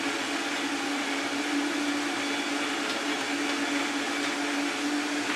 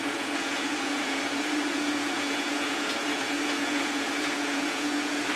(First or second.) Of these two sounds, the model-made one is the second